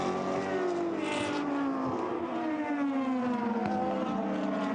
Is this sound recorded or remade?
recorded